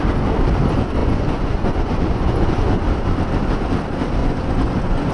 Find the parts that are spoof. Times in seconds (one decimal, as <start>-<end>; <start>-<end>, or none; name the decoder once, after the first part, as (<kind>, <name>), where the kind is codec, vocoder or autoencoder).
1.0-2.8 (vocoder, Vocos); 4.2-5.1